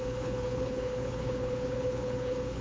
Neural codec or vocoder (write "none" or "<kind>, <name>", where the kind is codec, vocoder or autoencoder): codec, HILCodec